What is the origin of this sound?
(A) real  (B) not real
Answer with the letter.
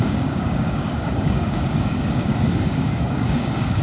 B